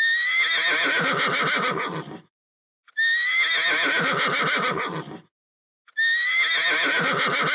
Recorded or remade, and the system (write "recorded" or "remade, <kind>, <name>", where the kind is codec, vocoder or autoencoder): recorded